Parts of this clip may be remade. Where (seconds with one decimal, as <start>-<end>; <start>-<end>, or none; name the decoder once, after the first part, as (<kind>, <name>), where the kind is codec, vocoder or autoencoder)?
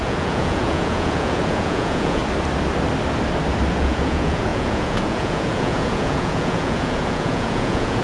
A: 0.0-2.2 (vocoder, Vocos); 3.7-8.0